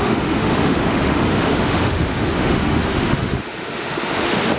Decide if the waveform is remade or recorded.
remade